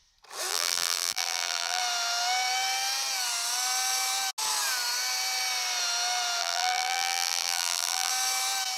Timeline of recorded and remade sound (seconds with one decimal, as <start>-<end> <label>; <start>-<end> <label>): 0.0-0.5 recorded; 0.5-1.8 remade; 1.8-6.4 recorded; 6.4-8.1 remade; 8.1-8.8 recorded